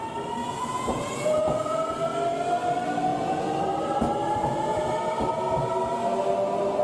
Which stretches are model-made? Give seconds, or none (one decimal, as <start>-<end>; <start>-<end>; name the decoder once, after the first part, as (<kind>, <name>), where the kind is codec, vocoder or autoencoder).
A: 0.4-1.8 (vocoder, Vocos); 3.1-3.6; 4.4-4.9